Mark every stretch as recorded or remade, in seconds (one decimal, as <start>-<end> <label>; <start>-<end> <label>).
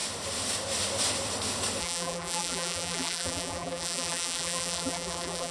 0.0-1.8 recorded; 1.8-5.5 remade